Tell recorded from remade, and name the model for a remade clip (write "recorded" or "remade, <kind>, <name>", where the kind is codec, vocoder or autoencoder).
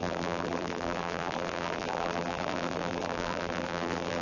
remade, vocoder, BigVGAN v2